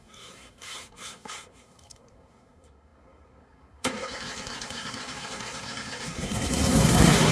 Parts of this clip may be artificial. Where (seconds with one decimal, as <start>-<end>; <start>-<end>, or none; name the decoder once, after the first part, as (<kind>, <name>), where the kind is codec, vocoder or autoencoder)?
0.0-7.3 (codec, SNAC)